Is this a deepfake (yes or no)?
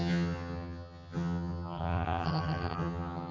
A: yes